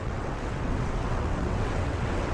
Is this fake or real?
fake